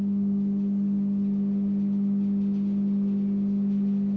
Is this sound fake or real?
real